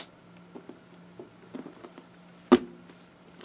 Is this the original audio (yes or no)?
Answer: yes